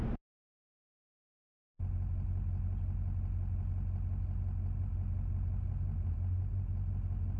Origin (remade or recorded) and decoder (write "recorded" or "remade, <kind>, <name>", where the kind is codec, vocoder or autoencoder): recorded